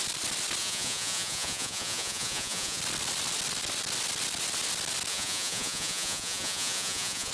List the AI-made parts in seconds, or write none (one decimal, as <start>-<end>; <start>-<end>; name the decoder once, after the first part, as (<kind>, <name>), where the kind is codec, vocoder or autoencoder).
0.6-2.8 (vocoder, Vocos); 5.1-7.3